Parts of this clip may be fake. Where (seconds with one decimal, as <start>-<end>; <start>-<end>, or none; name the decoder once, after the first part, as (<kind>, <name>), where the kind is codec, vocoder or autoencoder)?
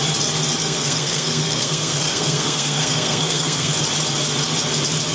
0.6-3.7 (codec, SNAC)